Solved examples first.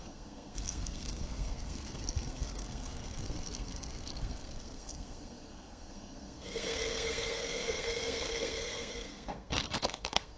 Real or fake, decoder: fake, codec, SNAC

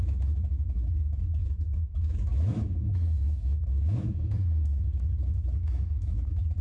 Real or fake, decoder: fake, autoencoder, DAC-VAE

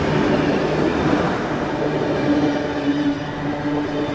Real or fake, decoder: real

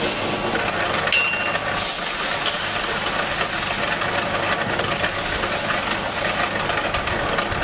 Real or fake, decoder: real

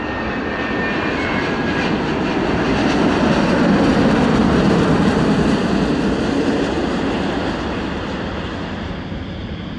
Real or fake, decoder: real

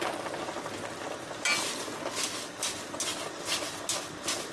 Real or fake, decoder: real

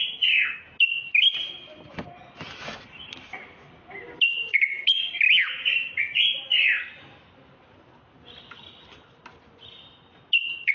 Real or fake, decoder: real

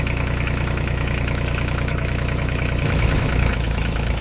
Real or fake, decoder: fake, autoencoder, DAC-VAE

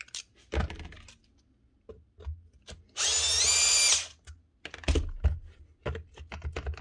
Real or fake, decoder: real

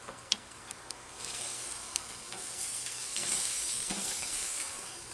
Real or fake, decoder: fake, codec, SNAC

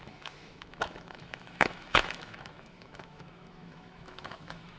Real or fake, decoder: fake, autoencoder, DAC-VAE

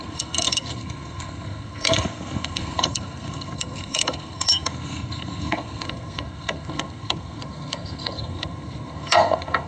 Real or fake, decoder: fake, codec, SNAC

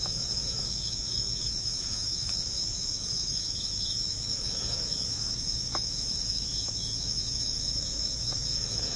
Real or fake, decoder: fake, autoencoder, DAC-VAE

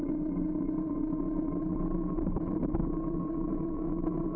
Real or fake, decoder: real